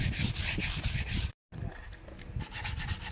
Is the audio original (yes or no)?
yes